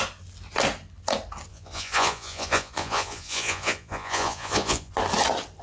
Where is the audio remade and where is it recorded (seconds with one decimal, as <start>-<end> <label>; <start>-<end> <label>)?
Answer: 0.0-1.5 recorded; 1.5-4.9 remade; 4.9-5.6 recorded